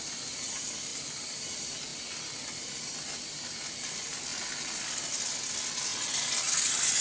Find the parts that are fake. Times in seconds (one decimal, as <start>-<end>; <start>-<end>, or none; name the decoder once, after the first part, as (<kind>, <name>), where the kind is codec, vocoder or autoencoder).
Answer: 0.9-1.4 (vocoder, BigVGAN v2)

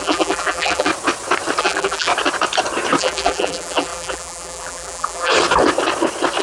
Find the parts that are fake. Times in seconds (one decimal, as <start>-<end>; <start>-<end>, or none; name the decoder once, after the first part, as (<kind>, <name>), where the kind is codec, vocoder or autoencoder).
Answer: 0.0-0.9 (vocoder, BigVGAN v2); 1.6-2.1; 3.0-5.3

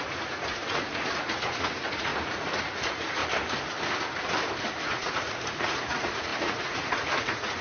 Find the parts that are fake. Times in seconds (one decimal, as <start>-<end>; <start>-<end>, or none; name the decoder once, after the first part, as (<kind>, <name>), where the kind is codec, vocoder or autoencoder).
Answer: 0.0-3.2 (vocoder, Vocos); 4.8-7.6

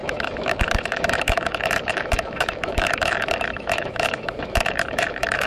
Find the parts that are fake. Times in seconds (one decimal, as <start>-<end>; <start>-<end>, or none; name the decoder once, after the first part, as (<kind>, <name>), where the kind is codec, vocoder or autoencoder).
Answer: 0.0-5.5 (autoencoder, DAC-VAE)

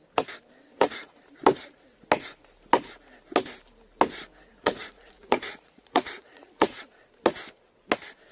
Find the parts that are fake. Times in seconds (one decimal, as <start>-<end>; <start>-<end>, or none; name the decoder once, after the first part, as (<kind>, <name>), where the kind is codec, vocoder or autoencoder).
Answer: 0.7-1.2 (vocoder, Vocos); 4.5-6.8